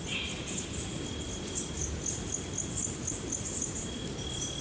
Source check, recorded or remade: recorded